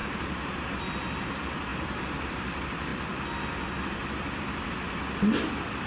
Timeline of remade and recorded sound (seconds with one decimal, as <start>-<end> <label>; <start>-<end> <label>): 0.0-0.8 remade; 0.8-5.9 recorded